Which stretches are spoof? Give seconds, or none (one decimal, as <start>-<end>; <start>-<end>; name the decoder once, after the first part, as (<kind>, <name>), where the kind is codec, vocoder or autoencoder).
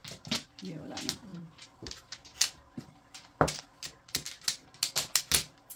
1.3-3.6 (vocoder, BigVGAN v2)